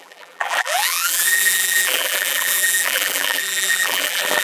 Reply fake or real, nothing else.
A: fake